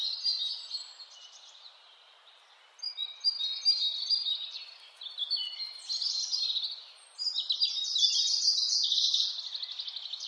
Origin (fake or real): real